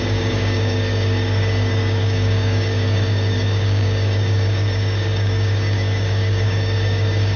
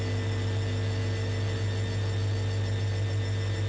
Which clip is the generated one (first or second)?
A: first